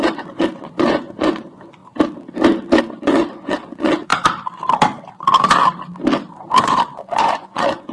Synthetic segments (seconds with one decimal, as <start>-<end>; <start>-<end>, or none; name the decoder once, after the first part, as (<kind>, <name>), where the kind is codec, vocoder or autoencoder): 0.0-1.8 (vocoder, Vocos); 2.8-4.1; 6.6-7.9